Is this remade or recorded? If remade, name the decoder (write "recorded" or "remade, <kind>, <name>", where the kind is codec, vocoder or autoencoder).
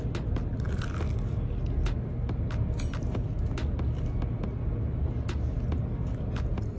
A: recorded